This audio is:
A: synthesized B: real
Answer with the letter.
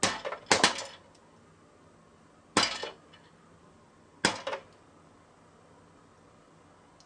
B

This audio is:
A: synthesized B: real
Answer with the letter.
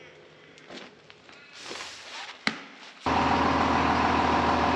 B